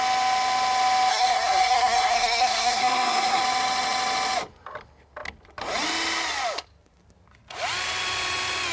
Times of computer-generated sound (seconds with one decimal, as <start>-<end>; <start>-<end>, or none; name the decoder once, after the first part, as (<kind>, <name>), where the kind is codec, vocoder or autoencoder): 1.1-3.4 (codec, SNAC)